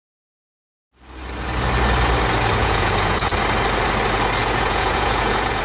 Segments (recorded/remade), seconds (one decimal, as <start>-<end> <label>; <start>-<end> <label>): 0.0-2.6 recorded; 2.6-3.3 remade; 3.3-4.4 recorded; 4.4-5.6 remade